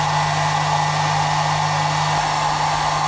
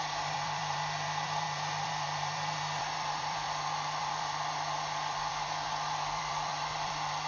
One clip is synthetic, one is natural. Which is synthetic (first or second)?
second